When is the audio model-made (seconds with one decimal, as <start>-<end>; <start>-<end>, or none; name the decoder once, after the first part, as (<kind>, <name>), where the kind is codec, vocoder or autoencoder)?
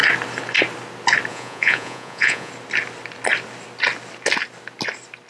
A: 1.3-2.5 (vocoder, Vocos)